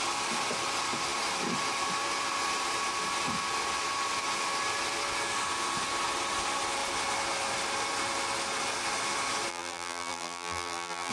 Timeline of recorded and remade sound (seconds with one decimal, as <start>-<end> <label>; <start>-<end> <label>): 0.0-9.5 recorded; 9.5-11.1 remade

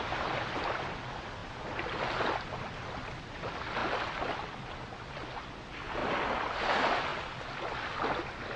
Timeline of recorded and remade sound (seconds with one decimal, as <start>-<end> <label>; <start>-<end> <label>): 0.0-8.6 recorded